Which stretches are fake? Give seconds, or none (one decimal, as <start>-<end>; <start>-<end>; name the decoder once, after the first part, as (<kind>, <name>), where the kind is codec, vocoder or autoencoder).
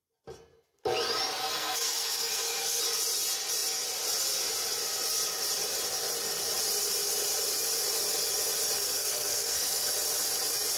1.4-2.8 (codec, SNAC); 8.8-9.9